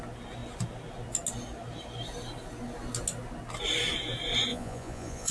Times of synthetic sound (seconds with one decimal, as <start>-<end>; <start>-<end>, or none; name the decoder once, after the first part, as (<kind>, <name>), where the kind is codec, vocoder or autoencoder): 4.5-5.3 (vocoder, Vocos)

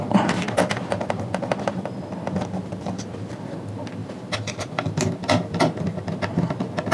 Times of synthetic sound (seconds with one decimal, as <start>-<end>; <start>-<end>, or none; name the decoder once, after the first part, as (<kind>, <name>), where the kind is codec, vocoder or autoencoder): none

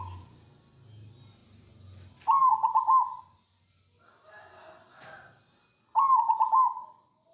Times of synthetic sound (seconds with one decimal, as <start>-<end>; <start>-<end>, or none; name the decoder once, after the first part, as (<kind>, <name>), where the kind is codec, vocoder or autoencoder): none

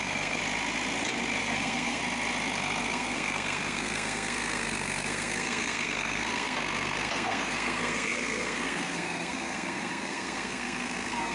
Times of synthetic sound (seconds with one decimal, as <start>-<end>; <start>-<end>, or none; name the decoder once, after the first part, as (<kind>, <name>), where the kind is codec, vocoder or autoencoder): 0.0-0.4 (codec, SNAC); 1.4-2.0; 2.8-11.3

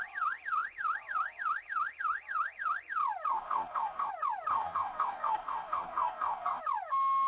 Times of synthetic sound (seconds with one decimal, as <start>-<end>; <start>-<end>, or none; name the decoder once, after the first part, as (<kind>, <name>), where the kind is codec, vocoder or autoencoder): 3.3-4.1 (codec, DAC); 4.5-6.6

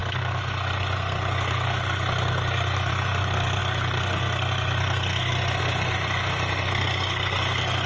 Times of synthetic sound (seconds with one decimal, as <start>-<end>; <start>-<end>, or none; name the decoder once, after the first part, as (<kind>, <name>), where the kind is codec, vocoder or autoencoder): 0.0-7.9 (codec, SNAC)

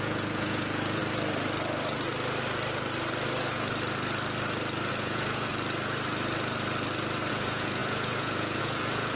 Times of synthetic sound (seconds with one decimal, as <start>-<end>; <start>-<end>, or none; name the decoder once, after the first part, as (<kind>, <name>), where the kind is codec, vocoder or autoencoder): 0.0-1.0 (vocoder, Vocos); 4.9-5.5; 7.3-9.2